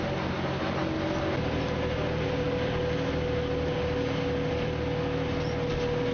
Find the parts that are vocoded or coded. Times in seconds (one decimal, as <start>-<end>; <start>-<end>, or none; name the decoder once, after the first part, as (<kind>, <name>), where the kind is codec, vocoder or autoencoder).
none

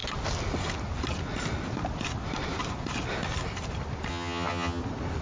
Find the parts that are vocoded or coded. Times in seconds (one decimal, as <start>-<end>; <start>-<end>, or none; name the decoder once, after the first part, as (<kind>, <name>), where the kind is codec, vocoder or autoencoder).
4.1-4.8 (vocoder, HiFi-GAN)